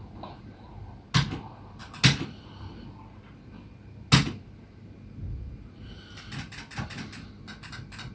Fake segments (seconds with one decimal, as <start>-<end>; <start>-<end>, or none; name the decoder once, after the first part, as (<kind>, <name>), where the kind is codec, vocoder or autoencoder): none

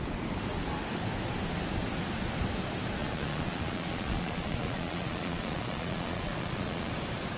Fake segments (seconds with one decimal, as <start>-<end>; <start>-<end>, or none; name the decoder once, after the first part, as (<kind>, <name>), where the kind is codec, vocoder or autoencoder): 3.0-6.9 (vocoder, Vocos)

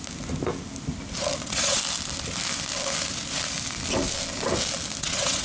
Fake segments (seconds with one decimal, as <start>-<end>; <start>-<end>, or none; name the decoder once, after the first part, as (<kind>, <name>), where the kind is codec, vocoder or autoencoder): 1.4-1.8 (vocoder, WaveNeXt); 5.0-5.4

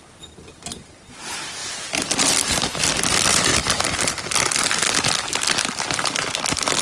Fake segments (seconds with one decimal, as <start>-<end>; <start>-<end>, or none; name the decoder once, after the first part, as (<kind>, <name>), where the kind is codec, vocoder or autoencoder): none